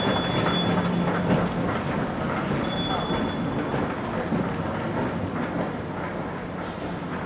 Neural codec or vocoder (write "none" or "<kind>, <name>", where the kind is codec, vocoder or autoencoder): none